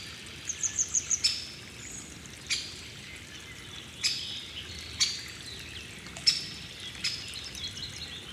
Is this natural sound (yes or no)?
yes